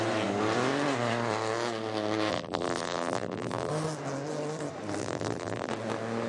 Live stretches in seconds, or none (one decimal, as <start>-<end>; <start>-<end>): 0.0-2.3; 3.7-5.0; 5.7-6.3